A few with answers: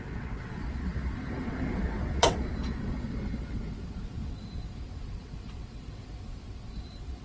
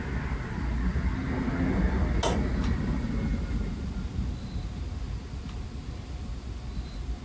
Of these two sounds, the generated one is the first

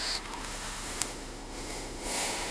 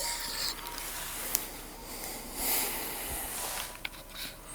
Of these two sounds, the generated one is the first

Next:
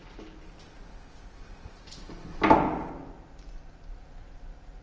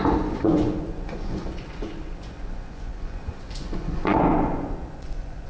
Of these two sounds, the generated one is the second